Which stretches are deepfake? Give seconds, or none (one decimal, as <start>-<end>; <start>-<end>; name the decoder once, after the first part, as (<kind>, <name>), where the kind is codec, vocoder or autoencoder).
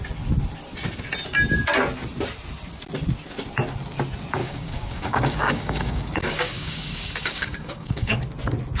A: 4.4-8.2 (codec, DAC)